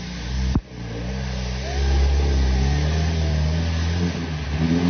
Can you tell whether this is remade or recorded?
recorded